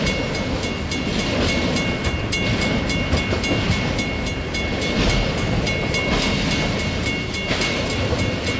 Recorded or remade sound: recorded